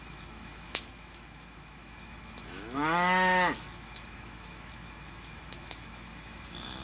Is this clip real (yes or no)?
no